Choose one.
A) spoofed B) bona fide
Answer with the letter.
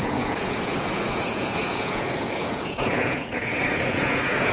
A